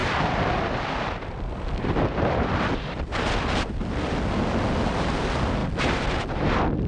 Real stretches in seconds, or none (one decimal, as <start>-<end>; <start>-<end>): 4.1-5.6; 6.2-6.9